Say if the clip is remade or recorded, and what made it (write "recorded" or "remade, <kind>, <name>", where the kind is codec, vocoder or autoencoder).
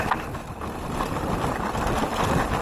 recorded